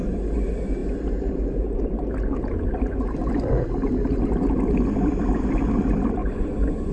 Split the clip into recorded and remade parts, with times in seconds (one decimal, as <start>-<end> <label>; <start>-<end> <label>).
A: 0.0-6.2 recorded; 6.2-6.9 remade